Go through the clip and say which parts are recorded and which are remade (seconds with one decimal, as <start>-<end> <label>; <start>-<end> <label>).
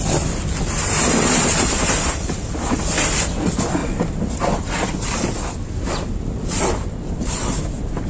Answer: 0.0-8.1 recorded